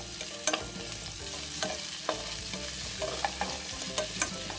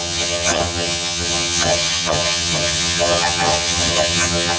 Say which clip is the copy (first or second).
second